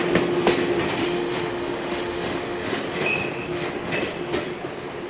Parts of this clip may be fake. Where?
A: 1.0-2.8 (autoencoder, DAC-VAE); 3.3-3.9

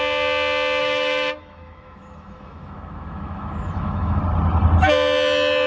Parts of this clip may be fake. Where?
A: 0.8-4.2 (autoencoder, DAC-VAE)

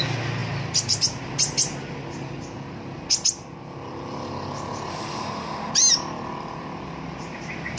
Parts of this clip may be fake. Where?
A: 4.9-5.7 (autoencoder, DAC-VAE)

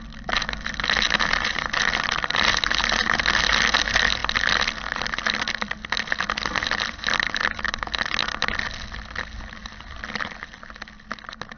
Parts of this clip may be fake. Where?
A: none

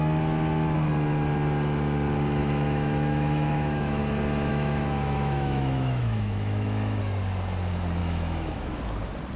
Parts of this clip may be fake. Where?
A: 2.4-4.0 (autoencoder, DAC-VAE); 4.5-7.0; 8.0-8.8

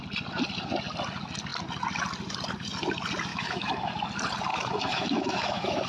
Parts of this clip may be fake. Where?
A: 3.3-3.9 (autoencoder, DAC-VAE); 4.5-5.9